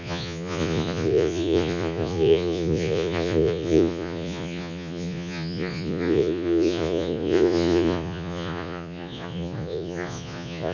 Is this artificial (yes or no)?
yes